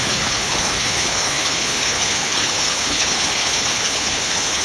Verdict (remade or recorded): remade